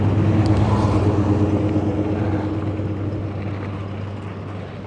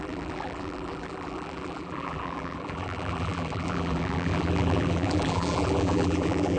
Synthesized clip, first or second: second